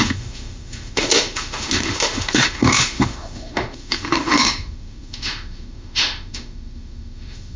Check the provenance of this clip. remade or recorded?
remade